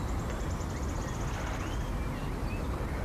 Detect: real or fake real